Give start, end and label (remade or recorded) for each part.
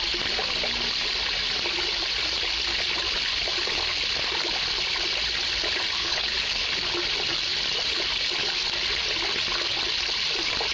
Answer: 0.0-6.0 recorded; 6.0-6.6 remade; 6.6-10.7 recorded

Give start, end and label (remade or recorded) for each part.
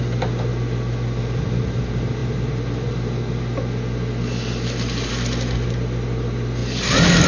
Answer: 0.0-7.3 recorded